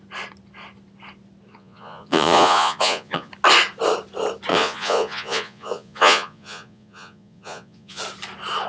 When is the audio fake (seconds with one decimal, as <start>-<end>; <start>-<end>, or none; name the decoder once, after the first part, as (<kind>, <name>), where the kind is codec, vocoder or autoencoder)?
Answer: 1.5-3.3 (vocoder, Vocos); 4.5-8.0